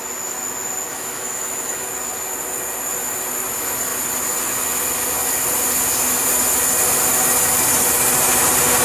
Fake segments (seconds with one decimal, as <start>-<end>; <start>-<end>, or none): 0.9-1.9